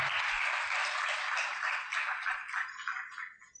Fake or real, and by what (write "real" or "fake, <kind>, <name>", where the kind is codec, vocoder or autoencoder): real